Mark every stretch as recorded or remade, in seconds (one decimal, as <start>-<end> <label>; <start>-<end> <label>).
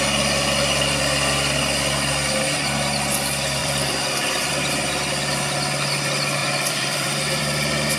0.0-3.6 recorded; 3.6-4.7 remade; 4.7-6.4 recorded; 6.4-7.4 remade; 7.4-8.0 recorded